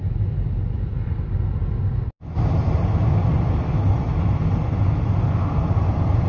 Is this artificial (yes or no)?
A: no